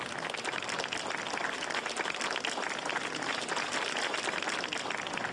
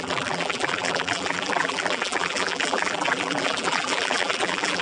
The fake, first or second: second